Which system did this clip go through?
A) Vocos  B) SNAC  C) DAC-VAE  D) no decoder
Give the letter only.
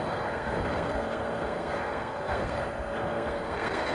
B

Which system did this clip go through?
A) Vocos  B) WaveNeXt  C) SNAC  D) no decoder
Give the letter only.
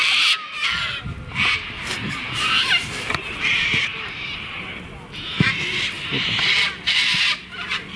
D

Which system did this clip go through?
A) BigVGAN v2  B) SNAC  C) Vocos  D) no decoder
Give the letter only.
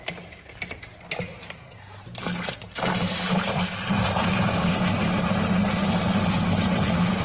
D